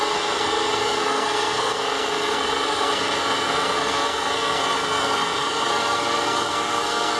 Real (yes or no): no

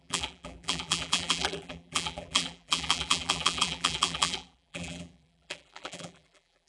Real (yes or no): no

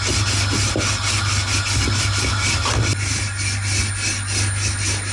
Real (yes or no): yes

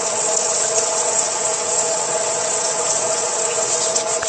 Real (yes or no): no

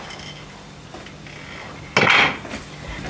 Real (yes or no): yes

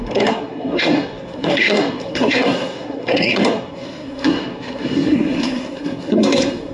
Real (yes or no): no